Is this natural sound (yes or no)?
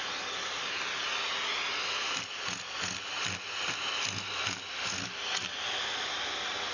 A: yes